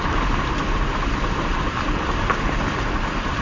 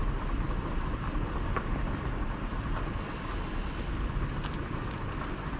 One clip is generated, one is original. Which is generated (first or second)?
first